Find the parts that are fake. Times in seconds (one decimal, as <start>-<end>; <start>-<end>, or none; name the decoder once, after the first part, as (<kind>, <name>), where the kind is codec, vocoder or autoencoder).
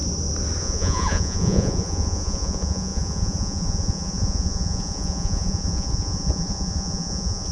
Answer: 0.6-7.5 (vocoder, Vocos)